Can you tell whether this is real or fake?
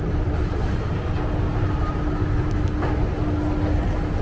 real